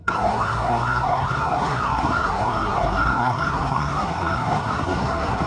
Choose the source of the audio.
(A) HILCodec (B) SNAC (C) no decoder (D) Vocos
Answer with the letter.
B